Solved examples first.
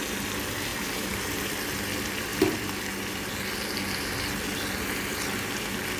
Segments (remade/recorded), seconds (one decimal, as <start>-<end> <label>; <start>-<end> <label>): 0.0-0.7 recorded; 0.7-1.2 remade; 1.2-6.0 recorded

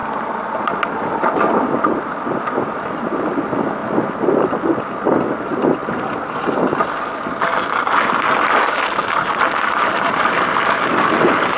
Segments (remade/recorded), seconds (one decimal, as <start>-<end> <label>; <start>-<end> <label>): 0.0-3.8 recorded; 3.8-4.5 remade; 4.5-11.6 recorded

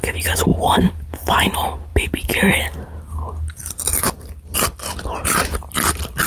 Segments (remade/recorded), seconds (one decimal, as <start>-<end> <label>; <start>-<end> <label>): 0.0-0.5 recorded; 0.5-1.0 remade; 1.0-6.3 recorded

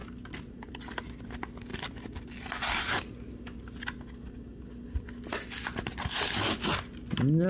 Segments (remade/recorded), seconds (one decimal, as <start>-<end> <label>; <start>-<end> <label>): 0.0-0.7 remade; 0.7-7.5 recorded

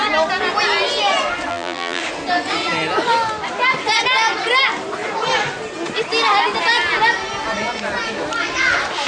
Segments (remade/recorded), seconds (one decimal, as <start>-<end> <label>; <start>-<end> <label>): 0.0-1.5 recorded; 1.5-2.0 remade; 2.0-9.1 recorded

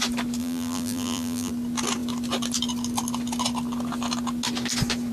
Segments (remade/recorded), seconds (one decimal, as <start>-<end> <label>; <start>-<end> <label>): 0.0-0.4 recorded; 0.4-1.5 remade; 1.5-5.1 recorded

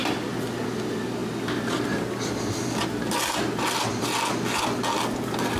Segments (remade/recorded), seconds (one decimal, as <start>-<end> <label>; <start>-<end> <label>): 0.0-5.6 recorded

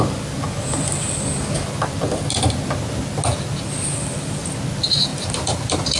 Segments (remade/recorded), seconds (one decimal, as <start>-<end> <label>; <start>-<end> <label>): 0.0-5.1 recorded; 5.1-6.0 remade